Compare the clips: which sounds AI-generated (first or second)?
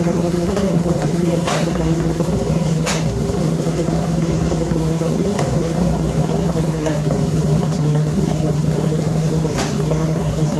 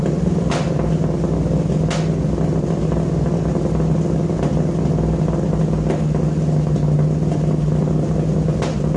first